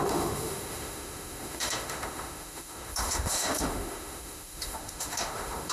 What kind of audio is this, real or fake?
fake